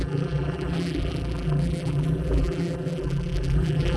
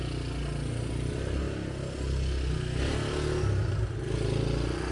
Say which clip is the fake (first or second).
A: first